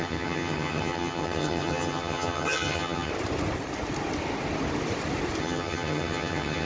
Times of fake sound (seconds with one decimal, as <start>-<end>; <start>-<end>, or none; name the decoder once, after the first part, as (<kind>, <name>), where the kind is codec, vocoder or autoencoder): 0.0-3.1 (vocoder, HiFi-GAN); 5.4-6.7

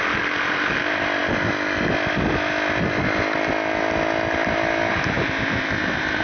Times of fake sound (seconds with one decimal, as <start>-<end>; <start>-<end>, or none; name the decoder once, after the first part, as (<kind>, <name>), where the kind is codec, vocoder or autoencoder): none

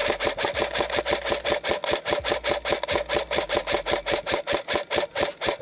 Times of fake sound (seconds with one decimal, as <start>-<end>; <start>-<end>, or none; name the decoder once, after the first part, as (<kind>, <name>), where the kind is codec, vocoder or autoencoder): none

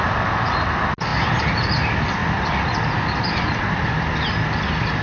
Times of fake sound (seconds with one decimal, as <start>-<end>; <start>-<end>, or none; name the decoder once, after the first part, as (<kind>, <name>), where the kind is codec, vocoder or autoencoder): none

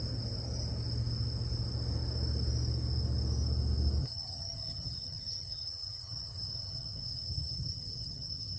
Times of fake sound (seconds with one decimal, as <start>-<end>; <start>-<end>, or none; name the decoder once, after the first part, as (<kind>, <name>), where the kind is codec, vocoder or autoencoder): 4.0-8.6 (vocoder, HiFi-GAN)